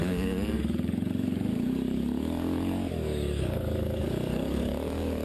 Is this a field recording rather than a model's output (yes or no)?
no